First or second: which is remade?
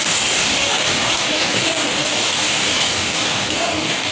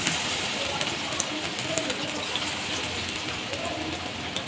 first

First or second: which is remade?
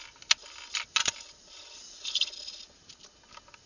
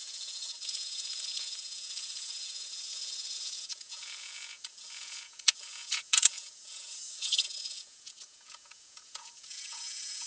second